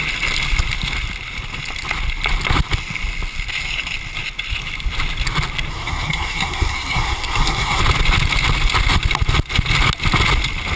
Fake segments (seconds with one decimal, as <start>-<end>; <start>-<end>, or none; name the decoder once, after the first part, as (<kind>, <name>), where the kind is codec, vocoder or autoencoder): 5.7-7.8 (codec, SNAC)